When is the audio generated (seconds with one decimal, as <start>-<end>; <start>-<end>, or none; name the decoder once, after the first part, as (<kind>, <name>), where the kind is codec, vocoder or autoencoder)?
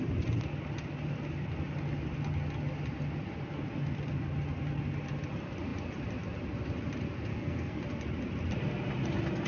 7.3-7.8 (codec, SNAC)